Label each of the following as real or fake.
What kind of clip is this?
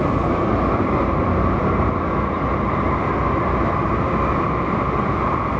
real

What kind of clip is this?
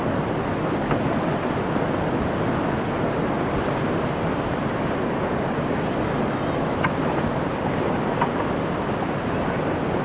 real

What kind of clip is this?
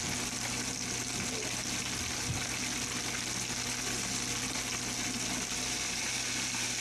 real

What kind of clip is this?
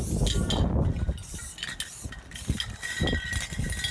real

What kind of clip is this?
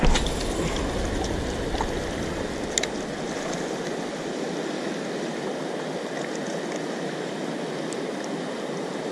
real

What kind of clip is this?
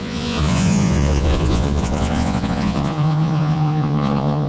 fake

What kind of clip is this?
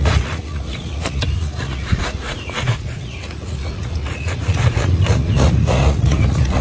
fake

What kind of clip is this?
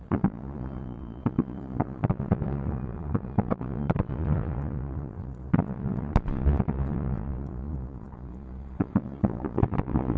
fake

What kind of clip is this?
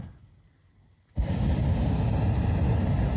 real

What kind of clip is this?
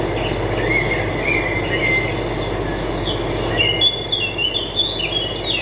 real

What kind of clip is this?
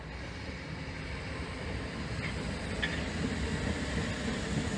real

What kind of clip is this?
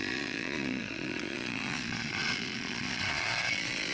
fake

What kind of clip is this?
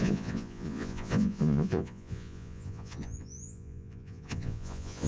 fake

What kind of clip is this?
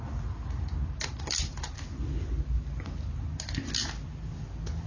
real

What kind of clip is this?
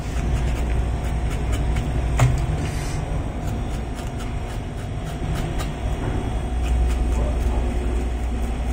real